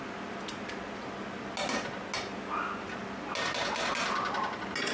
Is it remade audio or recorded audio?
recorded